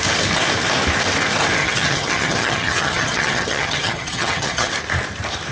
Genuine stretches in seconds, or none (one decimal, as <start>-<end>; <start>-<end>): 0.0-1.6; 4.7-5.5

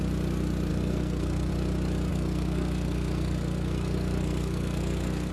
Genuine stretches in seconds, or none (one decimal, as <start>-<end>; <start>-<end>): 0.0-0.7; 1.5-2.1

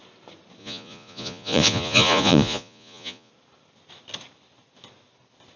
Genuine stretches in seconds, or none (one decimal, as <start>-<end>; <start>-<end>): 0.0-0.6; 3.3-5.6

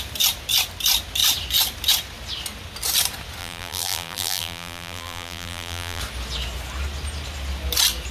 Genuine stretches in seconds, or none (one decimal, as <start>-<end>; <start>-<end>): 0.0-3.4; 6.0-8.1

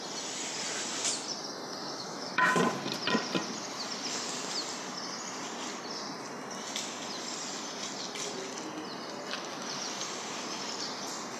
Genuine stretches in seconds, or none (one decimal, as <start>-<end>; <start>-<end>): 0.0-1.8; 2.6-11.4

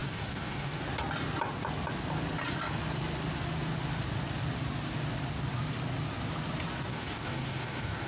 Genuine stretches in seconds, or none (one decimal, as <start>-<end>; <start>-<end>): 0.8-6.9